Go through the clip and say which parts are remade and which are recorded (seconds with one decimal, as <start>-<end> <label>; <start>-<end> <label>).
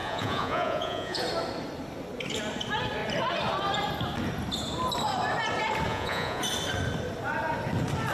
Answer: 0.0-1.2 remade; 1.2-5.9 recorded; 5.9-6.4 remade; 6.4-8.1 recorded